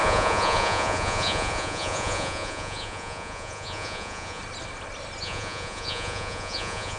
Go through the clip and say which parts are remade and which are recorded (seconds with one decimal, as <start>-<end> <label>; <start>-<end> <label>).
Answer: 0.0-4.4 remade; 4.4-5.2 recorded; 5.2-7.0 remade